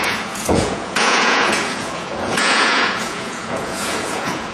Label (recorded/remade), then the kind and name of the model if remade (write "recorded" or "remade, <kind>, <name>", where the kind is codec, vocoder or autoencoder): remade, vocoder, Vocos